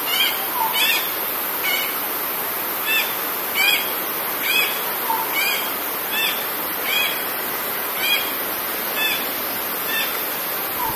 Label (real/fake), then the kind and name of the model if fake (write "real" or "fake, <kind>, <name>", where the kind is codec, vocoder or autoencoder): real